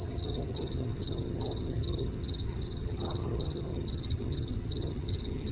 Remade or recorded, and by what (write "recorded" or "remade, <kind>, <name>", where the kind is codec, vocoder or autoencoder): remade, vocoder, HiFi-GAN